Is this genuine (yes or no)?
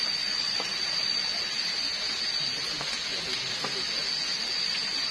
yes